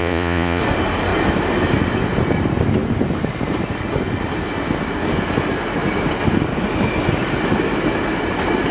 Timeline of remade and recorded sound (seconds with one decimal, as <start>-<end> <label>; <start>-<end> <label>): 0.0-0.6 remade; 0.6-8.7 recorded

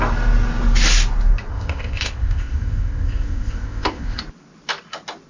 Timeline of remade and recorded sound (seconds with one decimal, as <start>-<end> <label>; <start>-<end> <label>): 0.0-1.5 recorded; 1.5-4.2 remade; 4.2-5.3 recorded

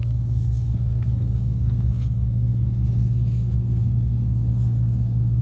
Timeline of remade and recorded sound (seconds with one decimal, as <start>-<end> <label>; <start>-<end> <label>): 0.0-5.4 remade